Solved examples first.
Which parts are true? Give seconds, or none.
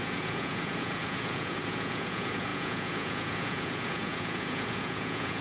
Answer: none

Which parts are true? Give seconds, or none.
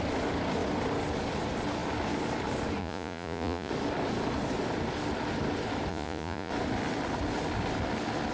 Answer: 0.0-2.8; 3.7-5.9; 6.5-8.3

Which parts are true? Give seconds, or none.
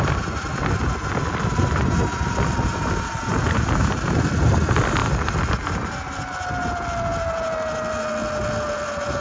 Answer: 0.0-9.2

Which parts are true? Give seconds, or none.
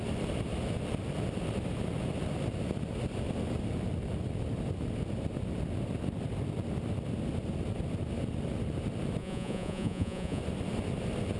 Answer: 0.0-9.2; 10.4-11.4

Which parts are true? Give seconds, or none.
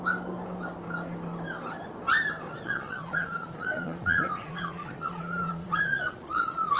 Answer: 0.0-2.5